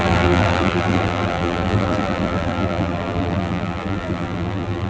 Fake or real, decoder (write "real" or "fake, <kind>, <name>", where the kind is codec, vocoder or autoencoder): fake, vocoder, BigVGAN v2